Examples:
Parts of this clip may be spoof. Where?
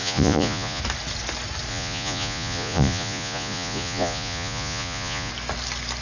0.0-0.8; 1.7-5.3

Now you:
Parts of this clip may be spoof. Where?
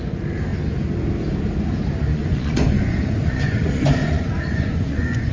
2.1-5.3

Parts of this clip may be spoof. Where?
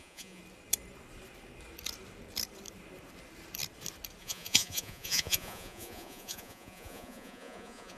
0.0-0.4; 4.2-8.0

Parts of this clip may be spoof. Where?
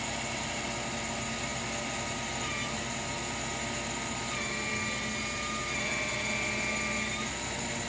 none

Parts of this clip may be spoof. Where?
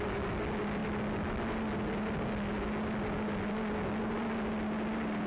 none